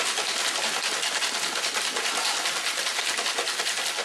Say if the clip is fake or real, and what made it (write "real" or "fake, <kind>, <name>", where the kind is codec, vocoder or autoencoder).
real